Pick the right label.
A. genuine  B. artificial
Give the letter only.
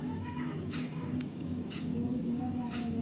B